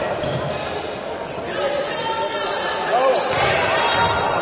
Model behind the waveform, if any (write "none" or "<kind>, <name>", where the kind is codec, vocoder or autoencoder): none